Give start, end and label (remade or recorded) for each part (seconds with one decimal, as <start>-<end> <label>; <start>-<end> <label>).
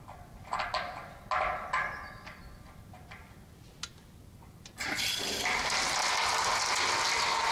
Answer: 0.0-7.5 recorded